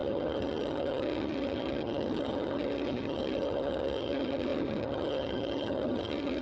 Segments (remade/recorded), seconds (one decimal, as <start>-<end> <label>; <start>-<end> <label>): 0.0-6.4 remade